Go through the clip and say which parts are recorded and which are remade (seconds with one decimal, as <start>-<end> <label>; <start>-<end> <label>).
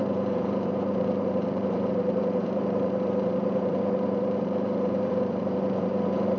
0.0-6.4 remade